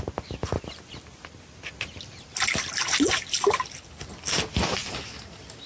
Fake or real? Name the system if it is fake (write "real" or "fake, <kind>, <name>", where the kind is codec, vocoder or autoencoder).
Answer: real